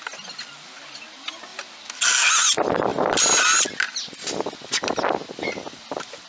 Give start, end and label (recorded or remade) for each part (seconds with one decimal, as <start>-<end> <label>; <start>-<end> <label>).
0.0-6.3 recorded